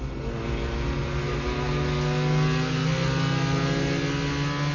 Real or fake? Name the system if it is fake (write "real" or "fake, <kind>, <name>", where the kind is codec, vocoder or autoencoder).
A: real